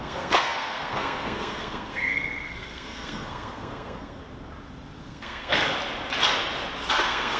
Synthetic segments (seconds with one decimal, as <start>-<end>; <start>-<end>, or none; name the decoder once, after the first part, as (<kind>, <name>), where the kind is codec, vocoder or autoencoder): 0.0-4.2 (codec, SNAC); 5.0-5.6; 6.9-7.4